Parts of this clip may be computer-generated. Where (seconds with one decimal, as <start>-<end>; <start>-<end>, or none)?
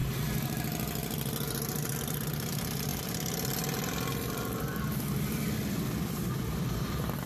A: 2.0-7.3